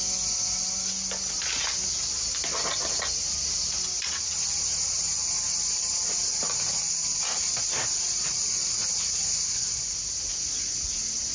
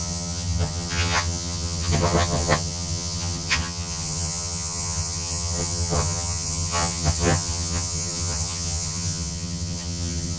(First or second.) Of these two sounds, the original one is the first